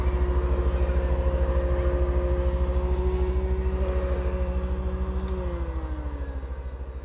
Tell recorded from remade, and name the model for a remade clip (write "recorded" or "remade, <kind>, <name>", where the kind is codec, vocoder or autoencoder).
recorded